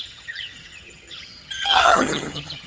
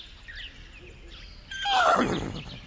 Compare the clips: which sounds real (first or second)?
second